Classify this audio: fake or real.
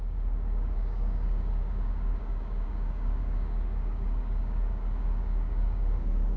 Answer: fake